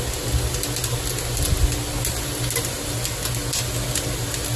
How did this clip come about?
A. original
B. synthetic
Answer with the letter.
A